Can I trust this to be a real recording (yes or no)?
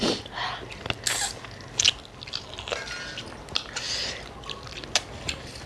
yes